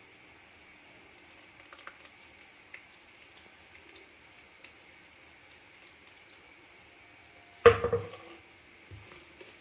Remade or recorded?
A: recorded